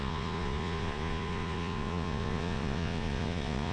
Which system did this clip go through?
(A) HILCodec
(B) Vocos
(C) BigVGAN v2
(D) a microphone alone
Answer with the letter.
B